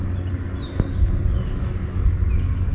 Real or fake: real